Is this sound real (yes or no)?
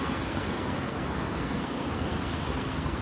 no